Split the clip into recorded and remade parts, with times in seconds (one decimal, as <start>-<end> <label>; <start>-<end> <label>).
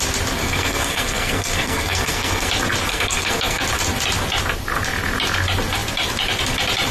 0.0-0.4 recorded; 0.4-2.5 remade; 2.5-2.9 recorded; 2.9-3.6 remade; 3.6-6.9 recorded